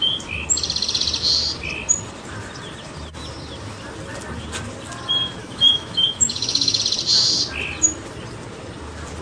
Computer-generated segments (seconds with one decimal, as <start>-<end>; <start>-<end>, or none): 5.4-6.8